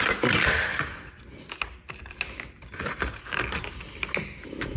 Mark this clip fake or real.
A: real